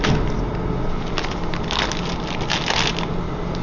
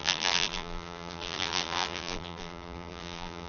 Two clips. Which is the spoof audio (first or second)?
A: second